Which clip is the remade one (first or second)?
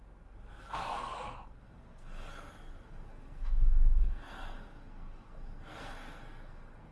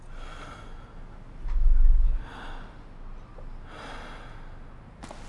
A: first